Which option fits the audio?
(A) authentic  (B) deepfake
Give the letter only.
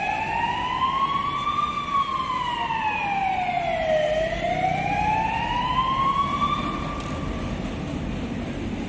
A